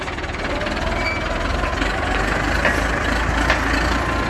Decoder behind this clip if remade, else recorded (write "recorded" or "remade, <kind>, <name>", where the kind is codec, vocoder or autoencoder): recorded